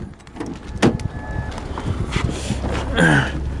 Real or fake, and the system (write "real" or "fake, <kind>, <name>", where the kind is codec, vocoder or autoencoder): real